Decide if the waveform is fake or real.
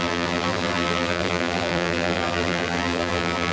fake